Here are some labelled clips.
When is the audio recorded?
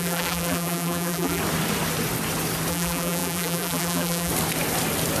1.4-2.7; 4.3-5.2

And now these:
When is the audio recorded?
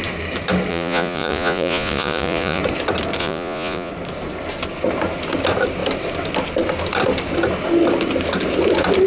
0.0-0.7; 2.6-3.2; 3.9-9.1